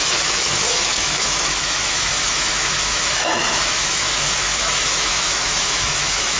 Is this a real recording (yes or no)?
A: no